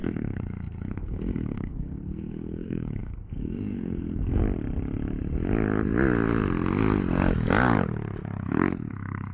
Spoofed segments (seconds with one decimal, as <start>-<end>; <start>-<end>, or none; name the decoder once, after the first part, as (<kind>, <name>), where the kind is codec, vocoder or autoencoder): 0.0-4.4 (codec, SNAC); 8.9-9.3